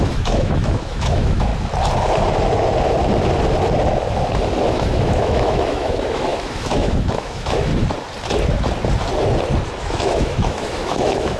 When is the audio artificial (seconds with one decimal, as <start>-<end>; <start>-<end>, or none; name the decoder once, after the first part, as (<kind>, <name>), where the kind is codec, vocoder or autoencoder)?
0.0-1.5 (autoencoder, DAC-VAE); 4.7-7.7; 9.8-11.4